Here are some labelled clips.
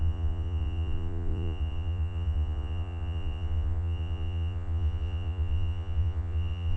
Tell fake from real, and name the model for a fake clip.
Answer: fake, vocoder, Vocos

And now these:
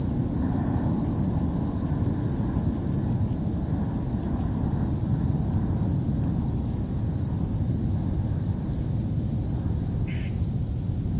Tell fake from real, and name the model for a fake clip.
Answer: real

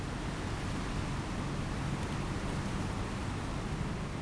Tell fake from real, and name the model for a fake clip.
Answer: real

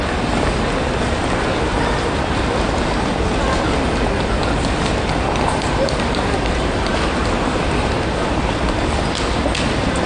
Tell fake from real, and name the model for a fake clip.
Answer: real